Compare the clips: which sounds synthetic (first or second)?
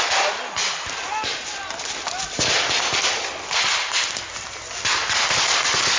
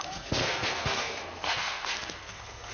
second